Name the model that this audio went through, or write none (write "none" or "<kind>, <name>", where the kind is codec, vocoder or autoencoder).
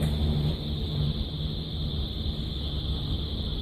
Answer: none